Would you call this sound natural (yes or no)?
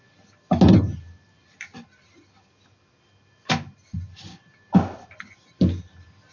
yes